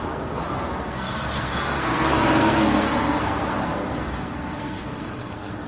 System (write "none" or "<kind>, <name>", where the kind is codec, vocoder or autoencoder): codec, SNAC